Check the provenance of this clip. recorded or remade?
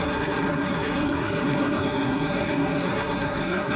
remade